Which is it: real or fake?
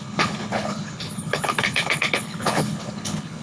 fake